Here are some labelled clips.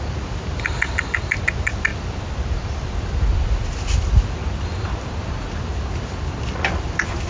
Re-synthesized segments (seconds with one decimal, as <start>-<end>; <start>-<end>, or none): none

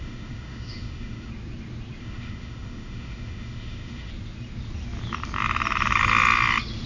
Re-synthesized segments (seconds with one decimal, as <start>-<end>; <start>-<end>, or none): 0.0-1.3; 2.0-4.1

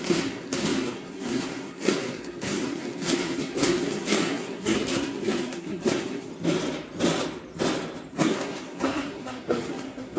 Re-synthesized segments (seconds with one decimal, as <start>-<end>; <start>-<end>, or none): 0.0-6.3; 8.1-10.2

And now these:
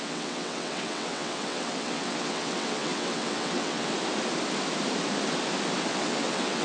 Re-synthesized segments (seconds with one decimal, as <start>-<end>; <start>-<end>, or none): 0.0-3.9; 5.9-6.6

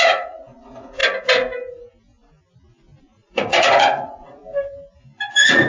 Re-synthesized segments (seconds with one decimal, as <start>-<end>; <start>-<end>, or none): 0.0-1.0; 3.0-4.4; 5.3-5.7